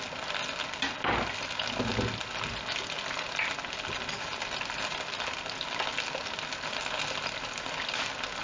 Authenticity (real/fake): real